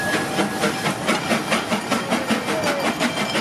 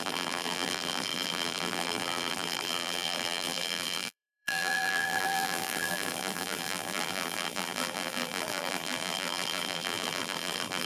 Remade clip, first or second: second